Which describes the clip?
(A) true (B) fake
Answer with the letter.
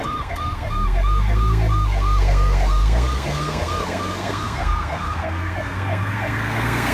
B